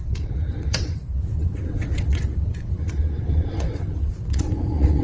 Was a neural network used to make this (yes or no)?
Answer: yes